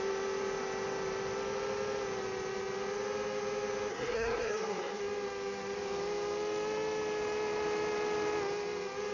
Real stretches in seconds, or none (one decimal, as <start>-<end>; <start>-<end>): 0.0-3.9; 5.0-9.1